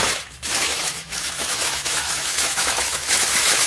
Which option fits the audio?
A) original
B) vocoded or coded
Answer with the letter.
B